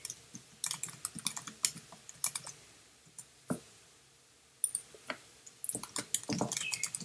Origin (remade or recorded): recorded